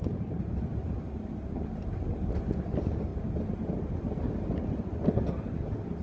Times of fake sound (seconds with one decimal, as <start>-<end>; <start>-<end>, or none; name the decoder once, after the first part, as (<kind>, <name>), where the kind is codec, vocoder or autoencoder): none